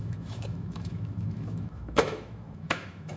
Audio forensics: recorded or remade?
remade